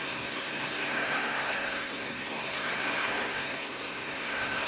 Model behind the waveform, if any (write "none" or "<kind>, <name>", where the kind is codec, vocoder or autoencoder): codec, SNAC